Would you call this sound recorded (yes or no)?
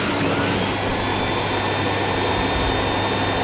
yes